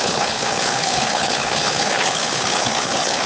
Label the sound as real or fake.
fake